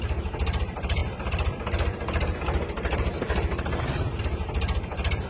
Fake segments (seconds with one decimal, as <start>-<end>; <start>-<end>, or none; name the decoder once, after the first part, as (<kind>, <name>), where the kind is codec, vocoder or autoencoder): none